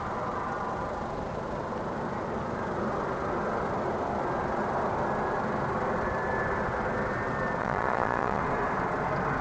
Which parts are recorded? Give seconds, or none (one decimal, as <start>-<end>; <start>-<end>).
0.0-7.6; 8.4-9.4

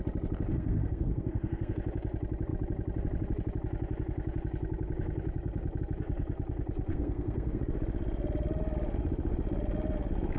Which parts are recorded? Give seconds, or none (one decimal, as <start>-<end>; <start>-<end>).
0.0-0.5; 1.7-6.9; 7.6-10.4